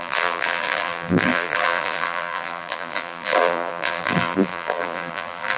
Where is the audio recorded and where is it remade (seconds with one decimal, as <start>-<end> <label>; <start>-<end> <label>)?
0.0-5.6 remade